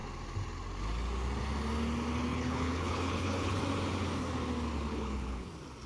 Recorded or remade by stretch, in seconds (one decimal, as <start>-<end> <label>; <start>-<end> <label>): 0.0-2.3 recorded; 2.3-3.6 remade; 3.6-4.9 recorded; 4.9-5.5 remade; 5.5-5.9 recorded